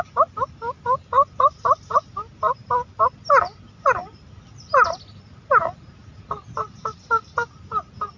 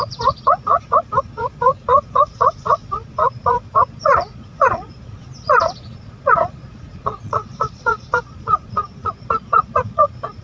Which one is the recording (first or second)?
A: first